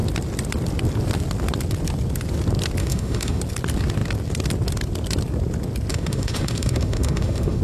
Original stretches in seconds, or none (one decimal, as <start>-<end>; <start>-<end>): 0.0-2.8; 3.4-5.9